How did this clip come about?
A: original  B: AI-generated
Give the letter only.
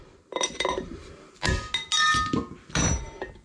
A